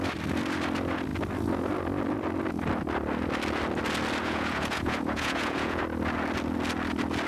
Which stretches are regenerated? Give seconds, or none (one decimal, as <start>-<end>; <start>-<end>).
4.2-5.8